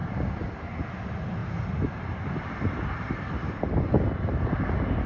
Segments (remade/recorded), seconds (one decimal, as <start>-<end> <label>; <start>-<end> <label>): 0.0-5.1 recorded